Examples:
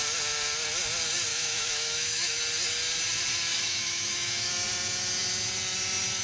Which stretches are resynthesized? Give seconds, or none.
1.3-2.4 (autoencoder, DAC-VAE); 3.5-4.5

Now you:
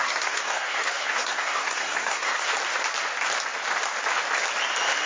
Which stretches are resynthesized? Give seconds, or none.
0.0-2.5 (codec, SNAC)

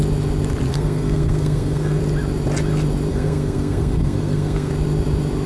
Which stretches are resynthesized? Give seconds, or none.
0.7-2.0 (codec, SNAC); 3.1-4.7

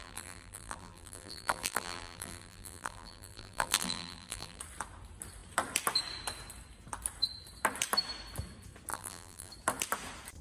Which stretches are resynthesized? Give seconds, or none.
0.0-4.6 (vocoder, BigVGAN v2); 8.9-9.5